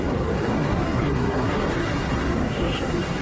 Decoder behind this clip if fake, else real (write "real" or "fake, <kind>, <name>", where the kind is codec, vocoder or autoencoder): fake, codec, SNAC